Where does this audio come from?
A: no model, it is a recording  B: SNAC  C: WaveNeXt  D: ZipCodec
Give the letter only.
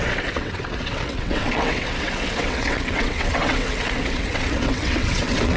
C